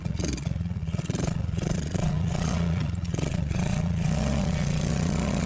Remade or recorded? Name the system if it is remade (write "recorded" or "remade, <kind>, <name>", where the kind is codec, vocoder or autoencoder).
remade, vocoder, Vocos